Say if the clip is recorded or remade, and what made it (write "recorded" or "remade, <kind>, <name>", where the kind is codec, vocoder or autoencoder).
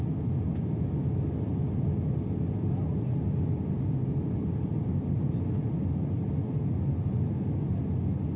recorded